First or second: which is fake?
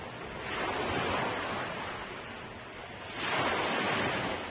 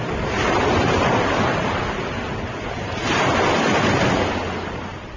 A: second